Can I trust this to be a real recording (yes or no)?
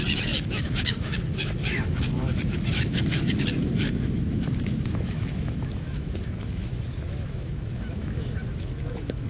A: no